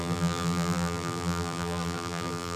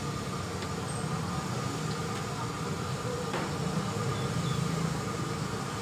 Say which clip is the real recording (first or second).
second